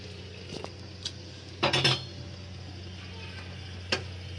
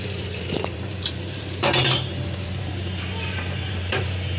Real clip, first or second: first